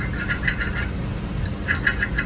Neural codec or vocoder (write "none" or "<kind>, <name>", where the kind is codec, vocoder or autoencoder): none